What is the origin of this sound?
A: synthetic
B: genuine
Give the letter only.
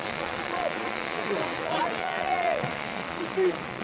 A